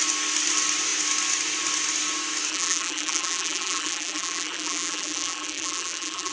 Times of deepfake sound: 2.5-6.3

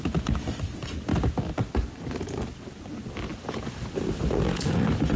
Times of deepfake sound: none

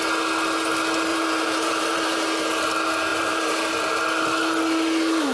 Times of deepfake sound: 1.1-2.4; 3.1-4.0

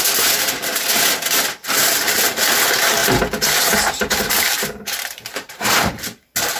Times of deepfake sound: 3.0-5.9